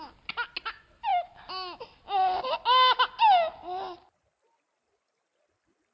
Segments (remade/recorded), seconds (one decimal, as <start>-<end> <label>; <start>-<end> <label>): 0.0-5.9 recorded